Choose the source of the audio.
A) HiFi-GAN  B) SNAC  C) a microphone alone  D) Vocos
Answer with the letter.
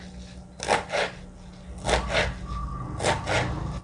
C